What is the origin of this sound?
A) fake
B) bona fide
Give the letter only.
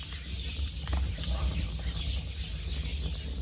B